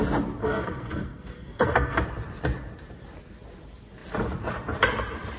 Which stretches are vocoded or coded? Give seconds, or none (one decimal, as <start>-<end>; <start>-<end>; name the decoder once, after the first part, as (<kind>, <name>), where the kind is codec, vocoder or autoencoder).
0.4-2.0 (codec, SNAC)